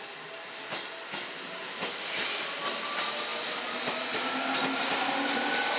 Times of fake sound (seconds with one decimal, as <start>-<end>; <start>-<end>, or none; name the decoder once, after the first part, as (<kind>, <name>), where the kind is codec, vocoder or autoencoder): none